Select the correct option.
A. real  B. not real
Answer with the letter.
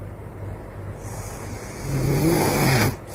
A